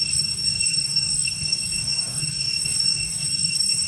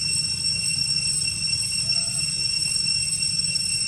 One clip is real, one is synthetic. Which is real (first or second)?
second